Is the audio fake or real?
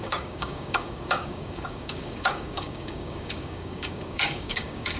fake